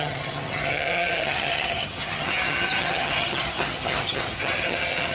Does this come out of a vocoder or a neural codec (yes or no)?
yes